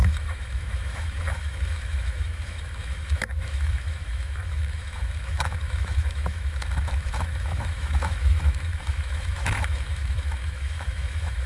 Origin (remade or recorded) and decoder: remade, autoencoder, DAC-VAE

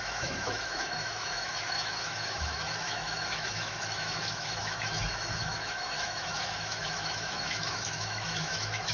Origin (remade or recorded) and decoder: remade, autoencoder, DAC-VAE